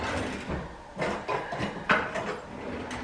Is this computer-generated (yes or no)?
no